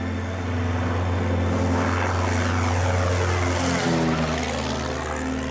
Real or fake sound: real